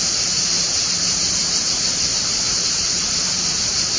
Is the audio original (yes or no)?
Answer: no